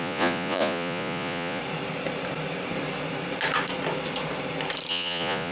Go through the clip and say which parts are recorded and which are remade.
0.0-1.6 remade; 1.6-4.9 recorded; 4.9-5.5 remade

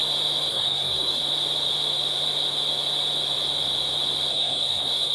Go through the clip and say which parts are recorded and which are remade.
0.0-0.5 recorded; 0.5-1.2 remade; 1.2-4.3 recorded; 4.3-5.1 remade

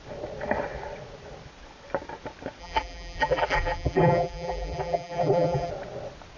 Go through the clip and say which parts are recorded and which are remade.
0.0-2.6 recorded; 2.6-5.7 remade; 5.7-6.4 recorded

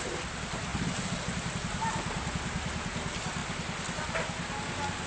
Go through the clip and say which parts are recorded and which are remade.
0.0-5.1 recorded